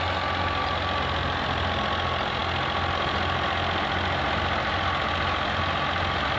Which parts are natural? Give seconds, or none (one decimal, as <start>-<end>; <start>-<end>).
0.0-6.4